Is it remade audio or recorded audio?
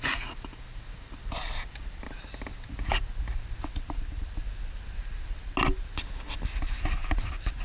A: recorded